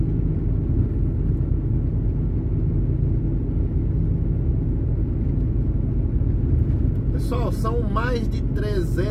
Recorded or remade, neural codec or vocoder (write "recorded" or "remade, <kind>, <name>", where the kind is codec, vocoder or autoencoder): recorded